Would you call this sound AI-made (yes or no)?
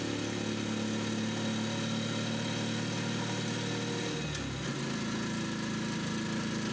no